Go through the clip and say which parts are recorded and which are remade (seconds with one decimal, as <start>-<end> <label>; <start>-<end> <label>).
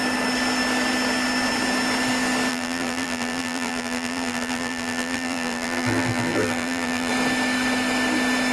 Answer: 0.0-2.5 recorded; 2.5-7.1 remade; 7.1-8.5 recorded